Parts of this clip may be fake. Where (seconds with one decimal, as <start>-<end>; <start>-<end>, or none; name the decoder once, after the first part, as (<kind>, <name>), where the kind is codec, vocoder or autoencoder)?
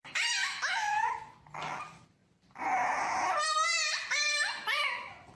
0.4-1.1 (autoencoder, DAC-VAE)